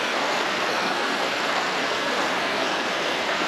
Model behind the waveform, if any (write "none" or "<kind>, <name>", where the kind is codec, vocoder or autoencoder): codec, SNAC